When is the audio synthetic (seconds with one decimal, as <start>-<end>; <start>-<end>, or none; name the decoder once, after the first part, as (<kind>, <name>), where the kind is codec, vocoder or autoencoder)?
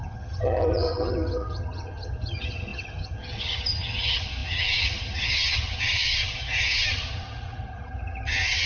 0.0-8.7 (vocoder, HiFi-GAN)